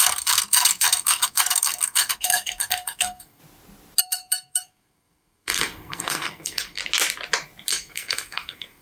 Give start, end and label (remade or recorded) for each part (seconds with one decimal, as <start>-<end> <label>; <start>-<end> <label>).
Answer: 0.0-3.4 remade; 3.4-4.0 recorded; 4.0-6.8 remade; 6.8-7.7 recorded; 7.7-8.8 remade